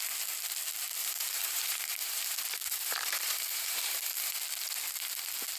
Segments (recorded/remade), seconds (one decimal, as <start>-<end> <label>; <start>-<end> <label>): 0.0-1.0 recorded; 1.0-4.4 remade; 4.4-5.6 recorded